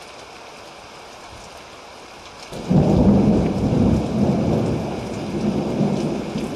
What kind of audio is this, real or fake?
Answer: real